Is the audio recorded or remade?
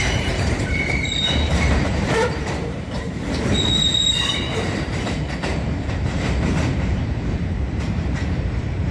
remade